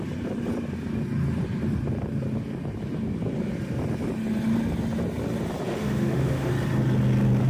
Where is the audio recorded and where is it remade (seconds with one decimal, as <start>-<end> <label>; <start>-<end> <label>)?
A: 0.0-5.7 recorded; 5.7-6.5 remade; 6.5-7.5 recorded